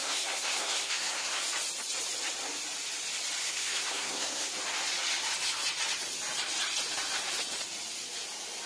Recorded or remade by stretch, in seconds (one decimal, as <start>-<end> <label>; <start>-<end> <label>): 0.0-1.4 remade; 1.4-3.4 recorded; 3.4-4.5 remade; 4.5-8.7 recorded